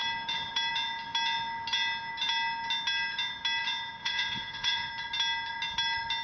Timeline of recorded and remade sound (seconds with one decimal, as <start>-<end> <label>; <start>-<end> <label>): 0.0-4.0 recorded; 4.0-4.9 remade; 4.9-6.2 recorded